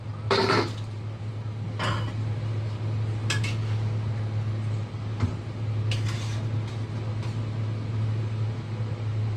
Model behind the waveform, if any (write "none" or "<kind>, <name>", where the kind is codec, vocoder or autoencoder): none